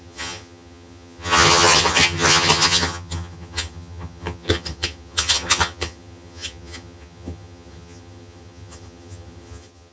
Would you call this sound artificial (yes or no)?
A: yes